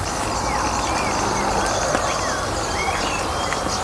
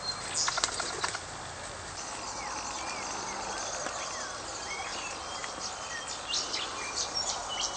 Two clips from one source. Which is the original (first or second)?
second